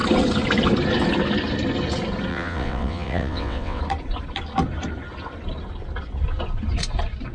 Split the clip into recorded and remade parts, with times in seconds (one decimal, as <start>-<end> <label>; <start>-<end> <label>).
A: 0.0-2.3 recorded; 2.3-3.8 remade; 3.8-7.3 recorded